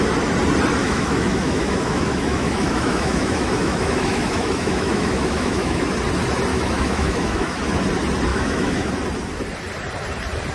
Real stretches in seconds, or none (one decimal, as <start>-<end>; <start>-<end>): 0.0-0.8; 5.9-6.5; 7.6-8.3; 8.9-10.5